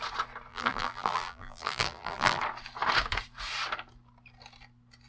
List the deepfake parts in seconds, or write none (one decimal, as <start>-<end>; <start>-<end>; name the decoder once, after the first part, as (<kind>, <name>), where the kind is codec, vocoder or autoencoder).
0.5-2.4 (vocoder, BigVGAN v2)